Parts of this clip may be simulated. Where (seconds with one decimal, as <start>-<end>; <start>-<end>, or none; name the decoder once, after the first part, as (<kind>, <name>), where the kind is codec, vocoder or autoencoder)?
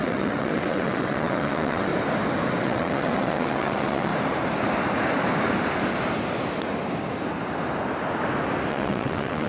0.0-1.9 (vocoder, WaveNeXt); 2.6-4.1; 8.7-9.5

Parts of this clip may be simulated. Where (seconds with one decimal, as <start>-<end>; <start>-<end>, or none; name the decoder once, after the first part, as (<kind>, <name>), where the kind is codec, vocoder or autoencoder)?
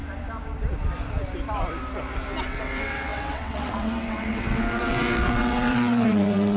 2.4-6.6 (vocoder, WaveNeXt)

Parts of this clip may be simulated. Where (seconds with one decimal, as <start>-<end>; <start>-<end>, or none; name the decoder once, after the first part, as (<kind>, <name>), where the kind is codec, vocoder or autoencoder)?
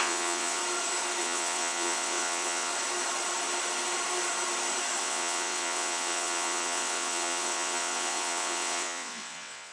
0.0-0.6 (vocoder, WaveNeXt); 1.2-2.7; 5.0-9.7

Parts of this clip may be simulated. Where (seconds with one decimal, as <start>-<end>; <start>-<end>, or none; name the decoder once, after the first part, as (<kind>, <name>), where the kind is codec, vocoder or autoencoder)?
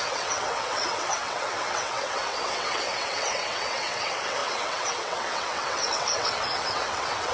0.0-7.3 (vocoder, WaveNeXt)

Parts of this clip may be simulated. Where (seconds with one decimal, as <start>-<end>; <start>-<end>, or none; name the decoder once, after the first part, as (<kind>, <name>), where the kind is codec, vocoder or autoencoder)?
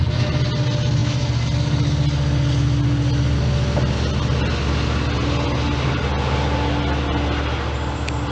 none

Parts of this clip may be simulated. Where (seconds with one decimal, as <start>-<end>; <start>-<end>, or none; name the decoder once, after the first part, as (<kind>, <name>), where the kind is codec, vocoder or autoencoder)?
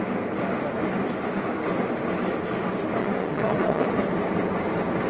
3.0-3.9 (vocoder, WaveNeXt)